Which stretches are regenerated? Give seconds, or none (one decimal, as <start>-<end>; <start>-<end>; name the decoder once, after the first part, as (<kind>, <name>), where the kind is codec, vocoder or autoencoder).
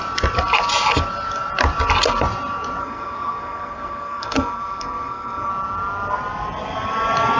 2.8-5.5 (codec, SNAC)